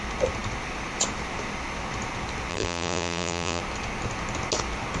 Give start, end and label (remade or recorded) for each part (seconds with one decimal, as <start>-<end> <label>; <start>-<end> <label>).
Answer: 0.0-2.5 recorded; 2.5-3.6 remade; 3.6-5.0 recorded